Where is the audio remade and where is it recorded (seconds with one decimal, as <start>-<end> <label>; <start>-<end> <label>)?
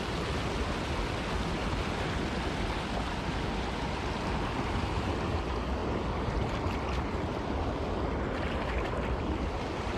0.0-10.0 recorded